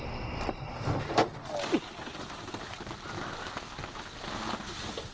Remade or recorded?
recorded